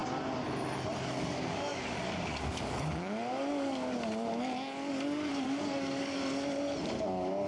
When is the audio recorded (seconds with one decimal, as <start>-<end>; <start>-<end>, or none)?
0.0-1.0; 6.2-7.0